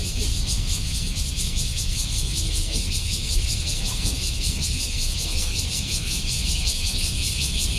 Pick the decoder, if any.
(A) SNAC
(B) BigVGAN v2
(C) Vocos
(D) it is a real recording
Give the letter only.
A